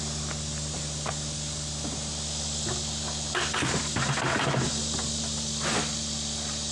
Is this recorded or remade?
remade